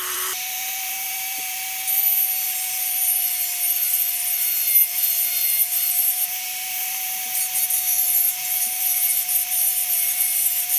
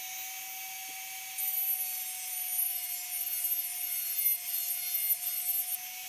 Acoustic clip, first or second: second